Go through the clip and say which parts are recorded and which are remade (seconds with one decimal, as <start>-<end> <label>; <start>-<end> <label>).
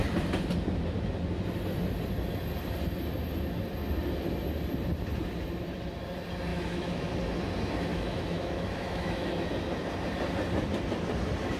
0.0-6.5 recorded; 6.5-7.0 remade; 7.0-7.9 recorded; 7.9-9.3 remade; 9.3-11.6 recorded